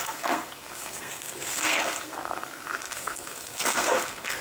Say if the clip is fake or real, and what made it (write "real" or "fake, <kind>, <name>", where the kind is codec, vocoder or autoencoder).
fake, codec, SNAC